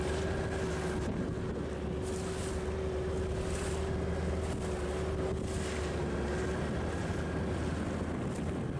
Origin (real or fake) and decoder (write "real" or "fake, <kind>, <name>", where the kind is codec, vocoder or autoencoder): real